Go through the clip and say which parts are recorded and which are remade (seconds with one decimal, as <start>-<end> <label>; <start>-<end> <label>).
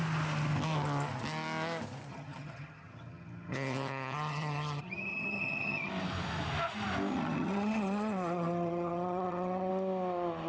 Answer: 0.0-2.1 recorded; 2.1-5.9 remade; 5.9-7.1 recorded; 7.1-9.7 remade; 9.7-10.5 recorded